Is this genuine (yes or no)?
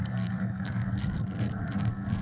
no